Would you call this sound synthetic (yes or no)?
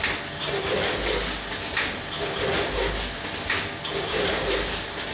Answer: no